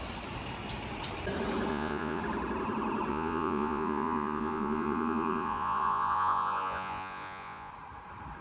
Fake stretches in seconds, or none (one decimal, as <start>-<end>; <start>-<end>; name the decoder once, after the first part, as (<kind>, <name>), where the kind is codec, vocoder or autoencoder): 1.7-2.2 (vocoder, Vocos); 3.1-7.7